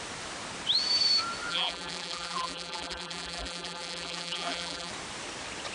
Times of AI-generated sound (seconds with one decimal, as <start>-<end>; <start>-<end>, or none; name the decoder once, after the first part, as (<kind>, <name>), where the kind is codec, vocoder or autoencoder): 1.5-4.9 (vocoder, BigVGAN v2)